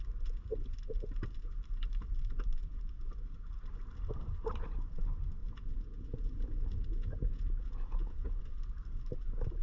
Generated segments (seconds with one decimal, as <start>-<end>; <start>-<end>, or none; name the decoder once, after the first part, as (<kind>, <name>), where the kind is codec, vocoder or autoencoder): 5.4-8.4 (vocoder, Vocos)